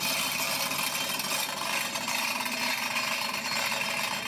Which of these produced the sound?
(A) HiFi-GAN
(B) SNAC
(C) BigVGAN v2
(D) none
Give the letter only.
D